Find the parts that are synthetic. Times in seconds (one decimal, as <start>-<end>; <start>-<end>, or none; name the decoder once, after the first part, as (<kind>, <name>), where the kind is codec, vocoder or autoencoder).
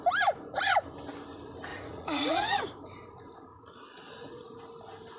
1.7-2.6 (vocoder, Vocos); 3.5-4.6